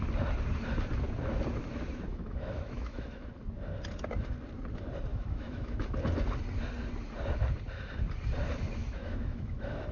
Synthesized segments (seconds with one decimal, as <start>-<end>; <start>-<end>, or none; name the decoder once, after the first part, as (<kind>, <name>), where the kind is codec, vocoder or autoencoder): 2.1-3.3 (autoencoder, DAC-VAE); 5.1-5.9; 8.8-9.9